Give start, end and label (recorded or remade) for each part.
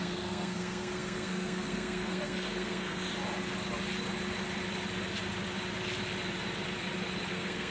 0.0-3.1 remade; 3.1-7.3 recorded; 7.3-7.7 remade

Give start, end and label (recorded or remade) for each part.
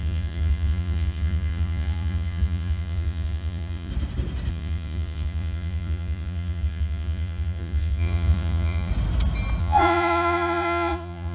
0.0-3.9 remade; 3.9-4.5 recorded; 4.5-8.9 remade; 8.9-9.6 recorded; 9.6-11.3 remade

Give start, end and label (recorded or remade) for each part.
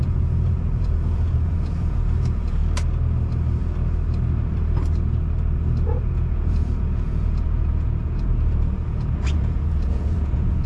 0.0-2.6 remade; 2.6-6.0 recorded; 6.0-10.7 remade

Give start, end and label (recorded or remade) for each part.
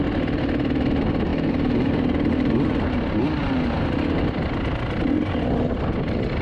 0.0-6.4 recorded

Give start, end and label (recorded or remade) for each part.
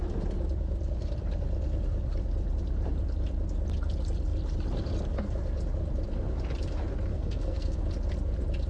0.0-7.1 recorded; 7.1-7.8 remade; 7.8-8.7 recorded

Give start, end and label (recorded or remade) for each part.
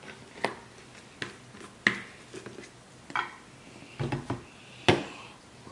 0.0-5.7 recorded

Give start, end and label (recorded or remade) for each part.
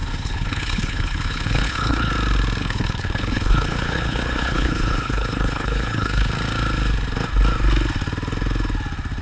0.0-2.1 remade; 2.1-2.6 recorded; 2.6-6.3 remade; 6.3-9.2 recorded